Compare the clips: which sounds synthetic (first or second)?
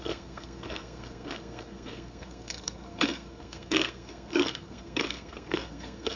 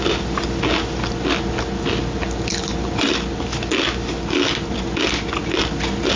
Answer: first